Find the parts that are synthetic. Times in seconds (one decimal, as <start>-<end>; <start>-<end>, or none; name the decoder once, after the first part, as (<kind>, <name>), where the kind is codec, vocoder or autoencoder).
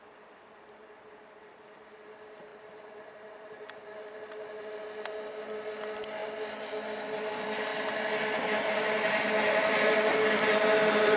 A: none